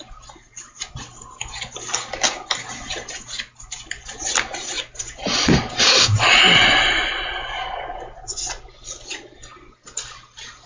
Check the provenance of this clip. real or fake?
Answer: real